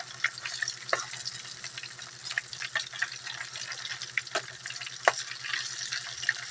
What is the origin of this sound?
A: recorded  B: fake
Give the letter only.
A